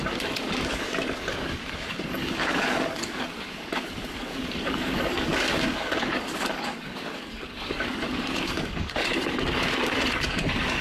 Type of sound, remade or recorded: remade